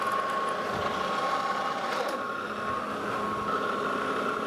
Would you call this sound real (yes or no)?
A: yes